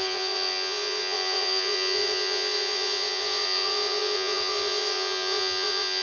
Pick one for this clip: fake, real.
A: fake